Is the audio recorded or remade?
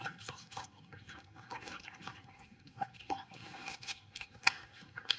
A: remade